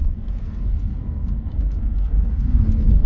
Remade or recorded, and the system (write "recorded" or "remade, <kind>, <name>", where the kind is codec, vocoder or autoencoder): remade, codec, SNAC